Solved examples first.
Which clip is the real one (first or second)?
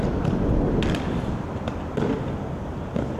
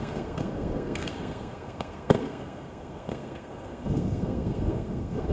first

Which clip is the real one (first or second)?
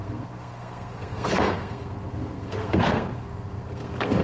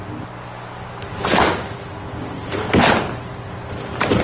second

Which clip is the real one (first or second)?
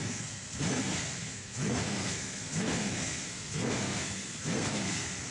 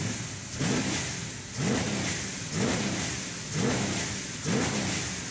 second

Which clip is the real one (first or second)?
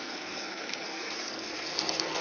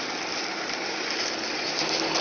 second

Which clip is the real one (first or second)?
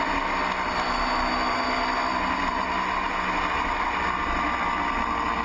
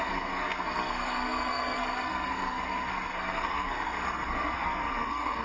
first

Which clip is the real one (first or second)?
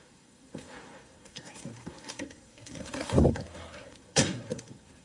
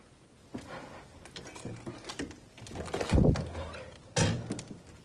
second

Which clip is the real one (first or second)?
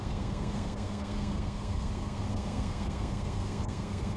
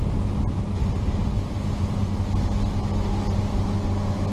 second